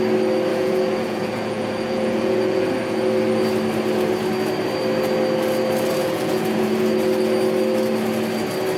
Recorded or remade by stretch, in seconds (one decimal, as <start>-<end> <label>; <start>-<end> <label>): 0.0-0.5 recorded; 0.5-2.7 remade; 2.7-6.0 recorded; 6.0-6.7 remade; 6.7-8.8 recorded